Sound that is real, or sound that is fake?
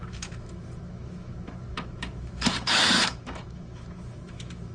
fake